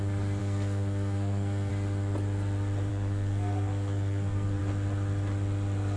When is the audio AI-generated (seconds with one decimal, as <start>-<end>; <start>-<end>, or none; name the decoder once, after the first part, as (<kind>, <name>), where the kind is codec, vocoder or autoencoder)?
0.4-1.7 (codec, SNAC); 2.9-4.6